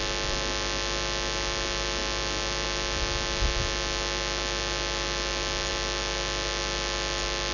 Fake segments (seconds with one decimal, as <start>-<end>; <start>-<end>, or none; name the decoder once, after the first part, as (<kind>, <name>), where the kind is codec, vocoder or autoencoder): none